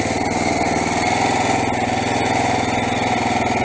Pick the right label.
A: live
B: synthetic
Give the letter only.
A